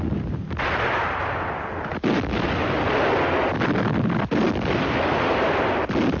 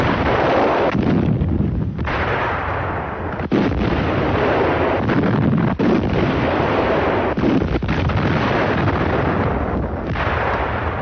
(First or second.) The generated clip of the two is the second